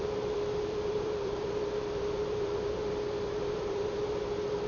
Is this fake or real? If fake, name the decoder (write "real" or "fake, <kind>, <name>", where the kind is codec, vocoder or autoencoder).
fake, vocoder, BigVGAN v2